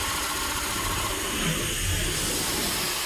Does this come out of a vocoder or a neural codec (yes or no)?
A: no